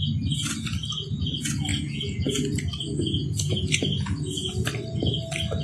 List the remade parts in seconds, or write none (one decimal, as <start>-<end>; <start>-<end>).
1.7-2.3; 3.2-4.5